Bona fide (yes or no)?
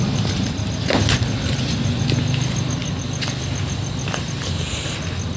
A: yes